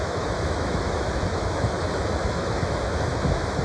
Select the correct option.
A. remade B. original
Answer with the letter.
A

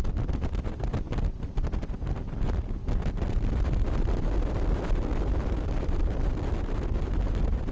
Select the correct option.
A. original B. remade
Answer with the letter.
A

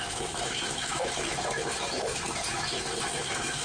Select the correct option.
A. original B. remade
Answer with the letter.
B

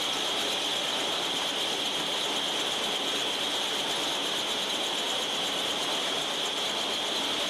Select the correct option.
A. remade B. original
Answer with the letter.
B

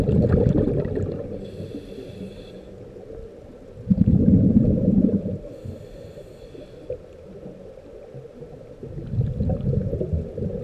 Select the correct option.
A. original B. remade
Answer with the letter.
A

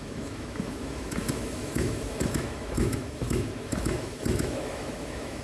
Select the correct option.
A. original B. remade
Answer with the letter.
B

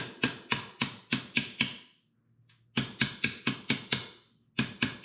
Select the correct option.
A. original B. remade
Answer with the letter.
A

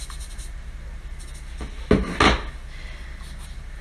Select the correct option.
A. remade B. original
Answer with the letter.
B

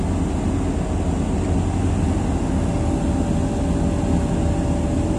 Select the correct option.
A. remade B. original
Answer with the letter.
B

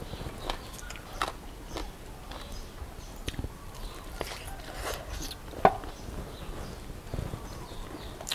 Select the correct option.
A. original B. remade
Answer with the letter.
A